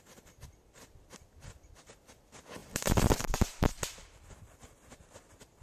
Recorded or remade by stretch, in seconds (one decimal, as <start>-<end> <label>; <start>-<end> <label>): 0.0-2.6 recorded; 2.6-4.7 remade; 4.7-5.6 recorded